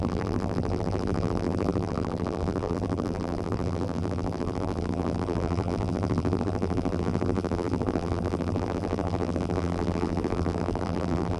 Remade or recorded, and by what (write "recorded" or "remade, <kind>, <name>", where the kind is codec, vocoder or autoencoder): remade, vocoder, BigVGAN v2